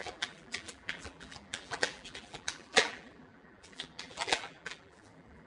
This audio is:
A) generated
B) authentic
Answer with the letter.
A